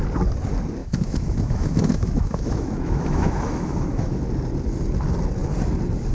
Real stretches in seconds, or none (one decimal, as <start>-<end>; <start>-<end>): 0.0-0.8; 4.2-6.1